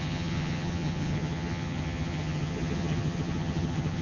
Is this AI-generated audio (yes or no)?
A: yes